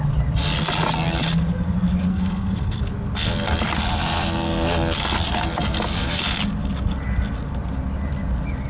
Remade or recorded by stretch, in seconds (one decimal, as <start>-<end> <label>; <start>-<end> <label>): 0.0-2.1 recorded; 2.1-2.8 remade; 2.8-8.7 recorded